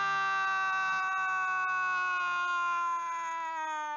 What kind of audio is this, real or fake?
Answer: real